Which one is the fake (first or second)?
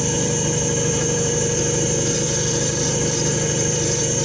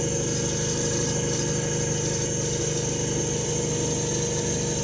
first